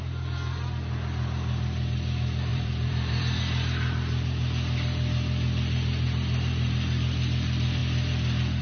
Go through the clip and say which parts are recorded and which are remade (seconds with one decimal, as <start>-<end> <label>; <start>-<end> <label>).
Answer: 0.0-2.5 recorded; 2.5-3.4 remade; 3.4-8.6 recorded